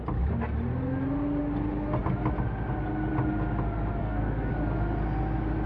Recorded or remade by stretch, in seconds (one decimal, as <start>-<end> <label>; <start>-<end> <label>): 0.0-4.0 recorded; 4.0-4.5 remade; 4.5-5.7 recorded